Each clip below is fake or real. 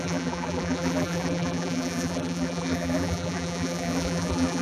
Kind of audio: fake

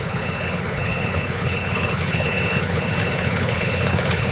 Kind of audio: fake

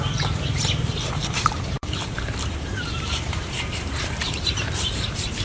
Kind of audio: fake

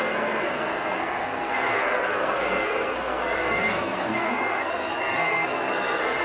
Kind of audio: fake